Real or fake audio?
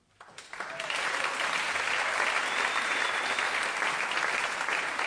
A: real